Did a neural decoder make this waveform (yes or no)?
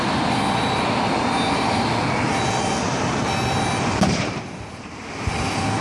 no